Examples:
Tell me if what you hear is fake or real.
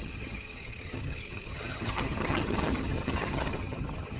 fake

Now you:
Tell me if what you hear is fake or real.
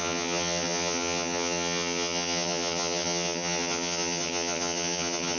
fake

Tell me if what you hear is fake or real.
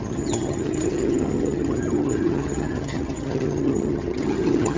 fake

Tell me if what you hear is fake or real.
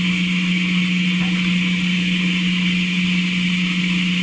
real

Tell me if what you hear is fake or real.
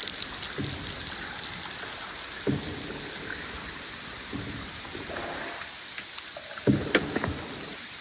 real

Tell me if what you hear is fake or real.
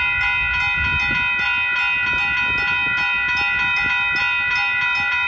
real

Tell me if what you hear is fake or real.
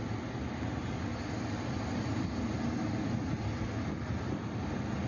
real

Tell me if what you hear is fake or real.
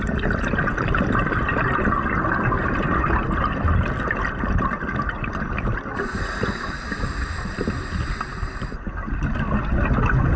real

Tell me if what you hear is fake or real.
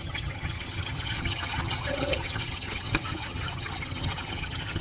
fake